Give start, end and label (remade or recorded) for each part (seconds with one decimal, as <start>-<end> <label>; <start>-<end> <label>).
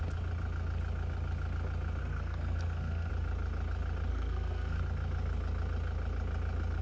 0.0-2.0 recorded; 2.0-3.1 remade; 3.1-4.1 recorded; 4.1-4.8 remade; 4.8-6.8 recorded